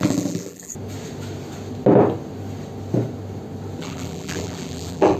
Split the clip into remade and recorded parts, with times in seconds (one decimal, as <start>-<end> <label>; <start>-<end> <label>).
0.0-0.7 remade; 0.7-3.8 recorded; 3.8-5.2 remade